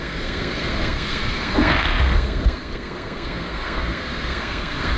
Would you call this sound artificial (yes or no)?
yes